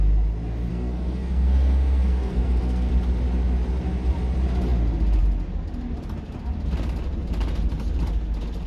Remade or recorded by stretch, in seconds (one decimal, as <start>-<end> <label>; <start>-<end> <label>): 0.0-0.7 recorded; 0.7-2.9 remade; 2.9-8.7 recorded